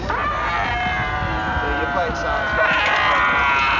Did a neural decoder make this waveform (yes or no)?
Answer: no